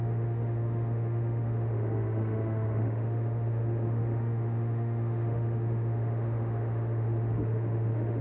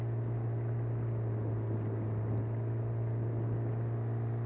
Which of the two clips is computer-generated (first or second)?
first